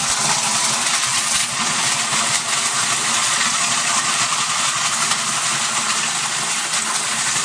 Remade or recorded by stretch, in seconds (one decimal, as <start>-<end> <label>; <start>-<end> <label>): 0.0-1.1 recorded; 1.1-1.8 remade; 1.8-3.2 recorded; 3.2-4.9 remade; 4.9-7.4 recorded